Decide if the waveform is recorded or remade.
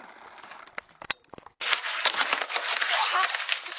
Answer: recorded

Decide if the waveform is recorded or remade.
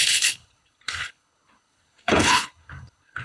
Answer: remade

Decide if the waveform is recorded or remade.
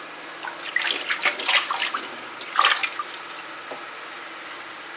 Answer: recorded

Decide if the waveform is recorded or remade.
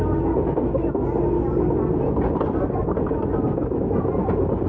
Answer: recorded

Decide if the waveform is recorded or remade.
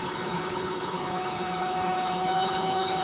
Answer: remade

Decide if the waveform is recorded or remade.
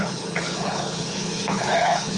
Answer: remade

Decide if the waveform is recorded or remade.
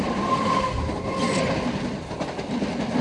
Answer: recorded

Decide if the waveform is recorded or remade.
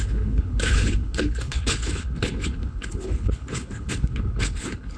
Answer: remade